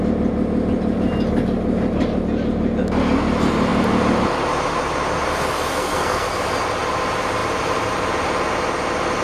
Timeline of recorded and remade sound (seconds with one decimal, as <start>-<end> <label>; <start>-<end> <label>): 0.0-5.7 recorded; 5.7-6.3 remade; 6.3-9.2 recorded